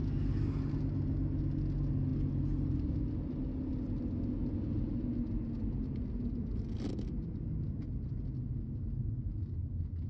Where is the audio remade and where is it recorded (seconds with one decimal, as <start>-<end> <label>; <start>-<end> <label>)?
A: 0.0-10.1 recorded